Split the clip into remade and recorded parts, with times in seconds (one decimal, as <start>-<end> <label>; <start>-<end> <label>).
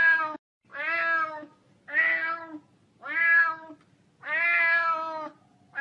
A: 0.0-5.8 recorded